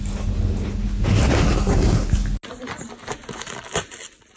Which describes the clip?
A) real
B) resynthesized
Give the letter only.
A